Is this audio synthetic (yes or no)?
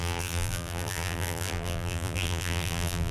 yes